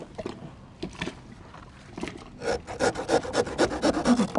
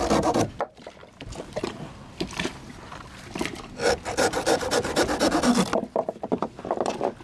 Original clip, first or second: first